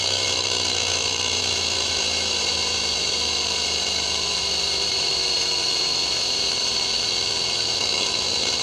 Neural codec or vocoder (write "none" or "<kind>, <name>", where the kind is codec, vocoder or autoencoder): autoencoder, DAC-VAE